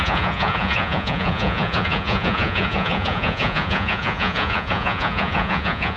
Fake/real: fake